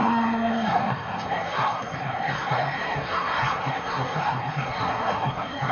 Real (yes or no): no